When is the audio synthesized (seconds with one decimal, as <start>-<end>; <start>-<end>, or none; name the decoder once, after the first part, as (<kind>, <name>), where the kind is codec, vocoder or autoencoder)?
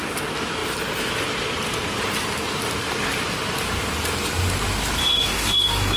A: 5.0-6.0 (codec, DAC)